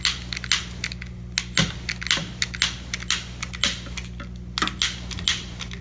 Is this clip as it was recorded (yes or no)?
yes